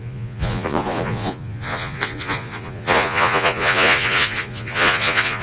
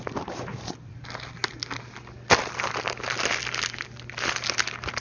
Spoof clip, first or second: first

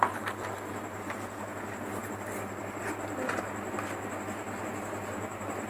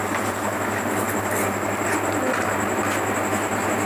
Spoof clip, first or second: first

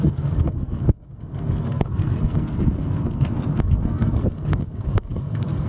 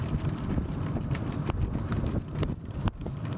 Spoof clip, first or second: first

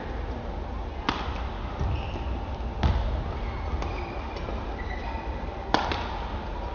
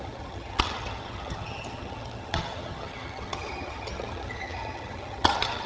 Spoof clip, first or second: second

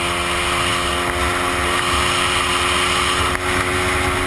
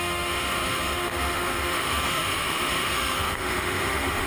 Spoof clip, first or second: second